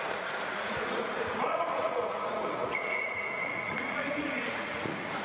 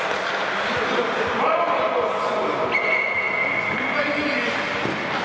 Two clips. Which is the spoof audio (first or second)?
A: first